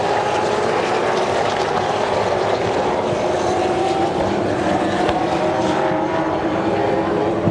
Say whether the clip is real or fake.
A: fake